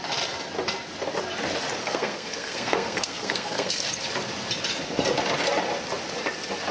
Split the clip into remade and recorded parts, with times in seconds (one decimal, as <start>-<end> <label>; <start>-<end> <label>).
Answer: 0.0-1.8 recorded; 1.8-3.9 remade; 3.9-6.7 recorded